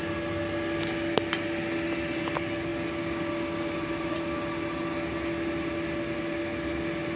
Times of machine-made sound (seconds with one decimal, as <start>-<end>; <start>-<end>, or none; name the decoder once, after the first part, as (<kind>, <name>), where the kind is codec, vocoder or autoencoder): none